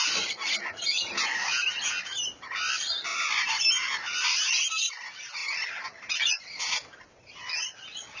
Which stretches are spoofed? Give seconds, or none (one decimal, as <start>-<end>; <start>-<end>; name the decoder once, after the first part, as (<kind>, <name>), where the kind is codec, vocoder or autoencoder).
none

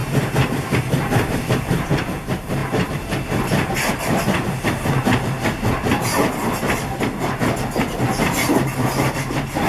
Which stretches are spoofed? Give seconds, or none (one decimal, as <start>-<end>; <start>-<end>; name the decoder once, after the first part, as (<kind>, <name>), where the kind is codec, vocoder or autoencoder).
none

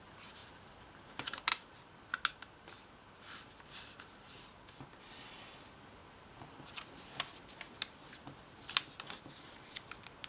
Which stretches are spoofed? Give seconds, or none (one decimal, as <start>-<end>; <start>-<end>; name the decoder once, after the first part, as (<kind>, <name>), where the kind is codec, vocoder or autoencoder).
none